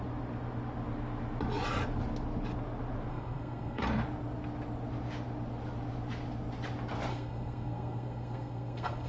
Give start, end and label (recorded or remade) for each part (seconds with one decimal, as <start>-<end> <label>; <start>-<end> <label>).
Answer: 0.0-3.1 recorded; 3.1-3.8 remade; 3.8-7.1 recorded; 7.1-9.1 remade